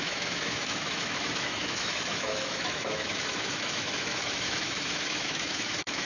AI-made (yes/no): yes